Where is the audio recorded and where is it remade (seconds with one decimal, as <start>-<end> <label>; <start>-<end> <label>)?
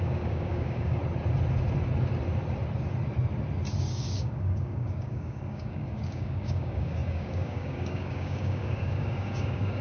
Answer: 0.0-1.0 remade; 1.0-3.8 recorded; 3.8-9.8 remade